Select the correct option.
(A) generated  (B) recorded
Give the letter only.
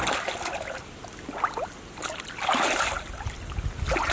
B